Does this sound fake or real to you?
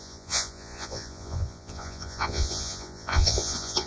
fake